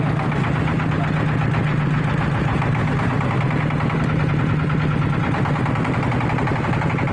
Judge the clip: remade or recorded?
recorded